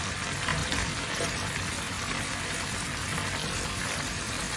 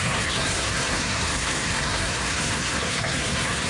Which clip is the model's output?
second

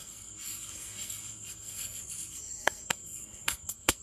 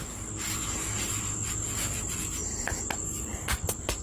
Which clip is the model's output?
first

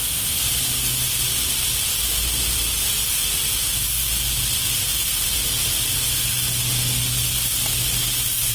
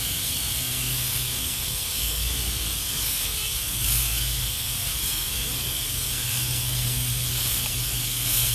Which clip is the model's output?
second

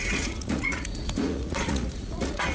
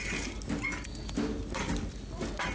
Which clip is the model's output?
first